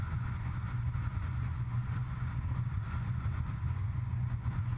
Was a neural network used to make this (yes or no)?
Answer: yes